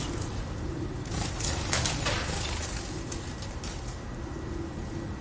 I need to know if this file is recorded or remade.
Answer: recorded